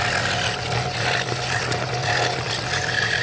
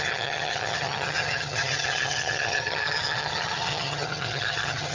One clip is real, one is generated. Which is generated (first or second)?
second